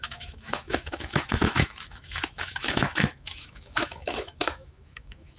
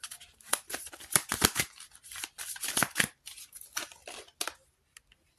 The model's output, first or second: first